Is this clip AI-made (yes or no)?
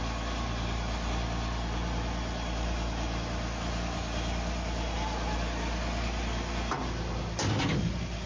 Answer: no